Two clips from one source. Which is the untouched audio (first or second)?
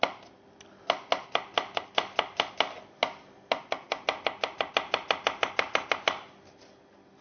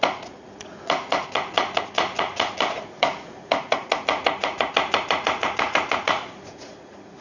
first